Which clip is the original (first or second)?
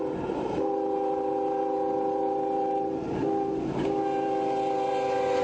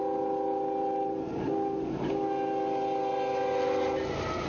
second